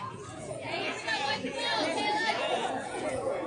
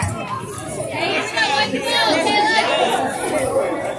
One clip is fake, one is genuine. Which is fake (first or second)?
first